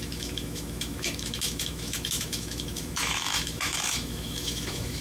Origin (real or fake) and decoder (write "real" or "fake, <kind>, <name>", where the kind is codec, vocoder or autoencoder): fake, autoencoder, DAC-VAE